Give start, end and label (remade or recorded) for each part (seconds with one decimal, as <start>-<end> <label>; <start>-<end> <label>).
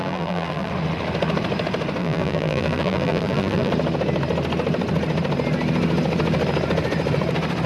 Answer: 0.0-0.7 remade; 0.7-2.0 recorded; 2.0-3.7 remade; 3.7-7.7 recorded